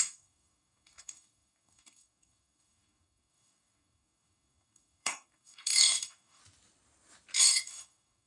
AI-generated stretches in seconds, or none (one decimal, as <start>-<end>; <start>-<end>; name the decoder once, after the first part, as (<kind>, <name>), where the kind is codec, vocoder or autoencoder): 0.0-6.4 (codec, DAC); 7.4-8.3